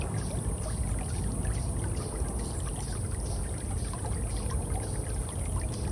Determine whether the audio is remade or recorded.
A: recorded